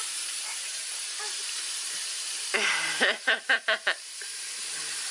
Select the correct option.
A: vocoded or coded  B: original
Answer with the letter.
A